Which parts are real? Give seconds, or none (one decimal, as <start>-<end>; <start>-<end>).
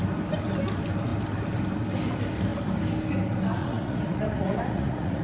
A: 0.0-3.6